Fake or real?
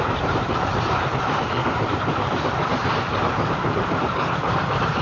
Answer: fake